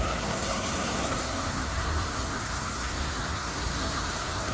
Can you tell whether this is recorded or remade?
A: remade